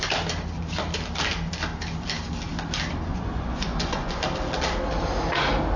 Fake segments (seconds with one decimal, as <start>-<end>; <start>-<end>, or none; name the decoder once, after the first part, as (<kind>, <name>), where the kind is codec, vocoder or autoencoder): 3.1-4.2 (vocoder, Vocos)